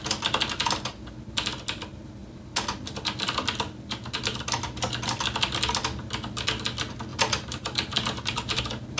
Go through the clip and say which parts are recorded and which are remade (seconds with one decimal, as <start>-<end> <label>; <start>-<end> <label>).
0.0-7.1 recorded; 7.1-8.6 remade; 8.6-9.0 recorded